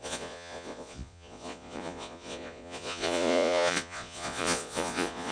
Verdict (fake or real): fake